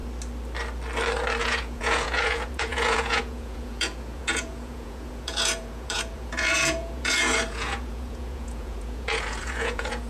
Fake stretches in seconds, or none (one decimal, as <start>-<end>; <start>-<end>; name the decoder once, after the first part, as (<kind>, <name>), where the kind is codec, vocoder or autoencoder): 1.4-10.1 (vocoder, Vocos)